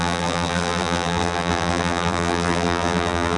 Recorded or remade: remade